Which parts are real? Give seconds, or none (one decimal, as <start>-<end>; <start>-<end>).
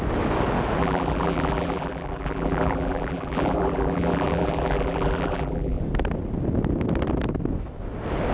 0.0-0.8; 5.8-8.3